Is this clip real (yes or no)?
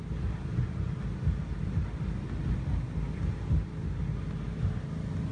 yes